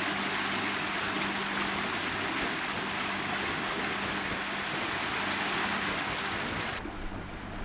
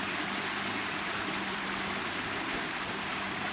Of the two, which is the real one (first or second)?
first